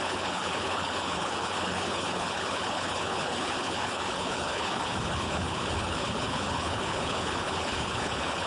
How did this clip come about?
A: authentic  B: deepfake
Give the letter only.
B